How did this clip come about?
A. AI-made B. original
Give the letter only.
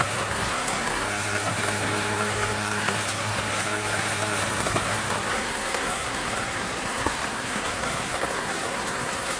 A